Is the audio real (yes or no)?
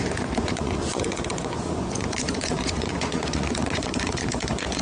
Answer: no